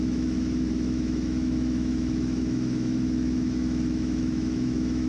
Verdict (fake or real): fake